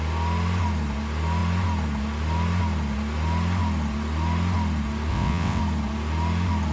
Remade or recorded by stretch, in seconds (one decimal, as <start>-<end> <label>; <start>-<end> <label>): 0.0-5.1 recorded; 5.1-5.6 remade; 5.6-6.7 recorded